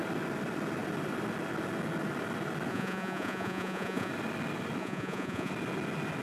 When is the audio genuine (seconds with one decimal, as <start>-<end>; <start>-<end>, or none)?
0.0-2.7; 4.1-4.8; 5.5-6.2